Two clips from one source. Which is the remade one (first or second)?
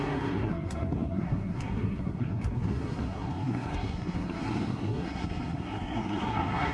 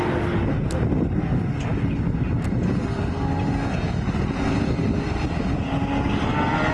first